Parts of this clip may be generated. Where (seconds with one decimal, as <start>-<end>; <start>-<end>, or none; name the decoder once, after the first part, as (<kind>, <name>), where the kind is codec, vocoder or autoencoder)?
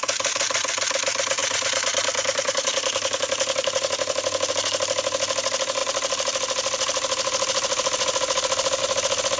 1.4-4.5 (vocoder, BigVGAN v2); 5.8-8.8